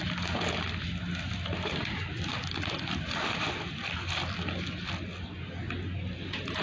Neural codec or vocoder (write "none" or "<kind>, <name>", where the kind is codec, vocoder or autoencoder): none